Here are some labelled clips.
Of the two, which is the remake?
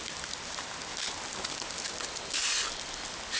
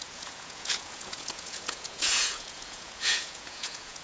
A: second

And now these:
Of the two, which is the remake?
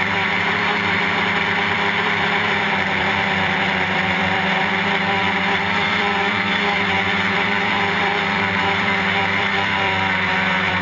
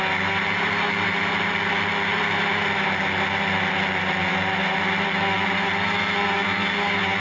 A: first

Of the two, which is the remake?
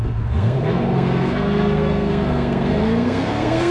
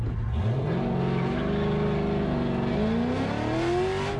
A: first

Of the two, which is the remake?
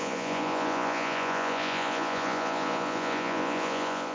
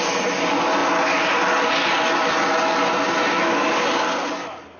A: first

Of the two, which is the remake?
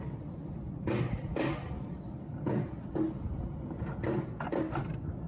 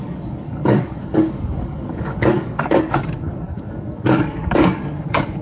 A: second